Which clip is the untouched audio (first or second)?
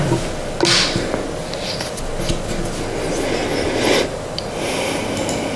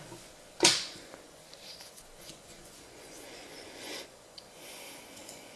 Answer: first